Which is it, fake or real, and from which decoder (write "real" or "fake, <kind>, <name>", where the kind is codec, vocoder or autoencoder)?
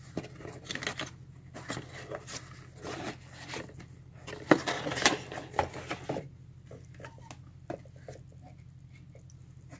real